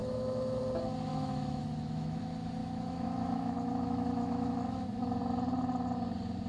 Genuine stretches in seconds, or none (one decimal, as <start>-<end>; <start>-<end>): 0.6-1.1; 2.2-2.6; 5.2-6.5